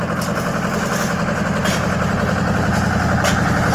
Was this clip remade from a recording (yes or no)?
no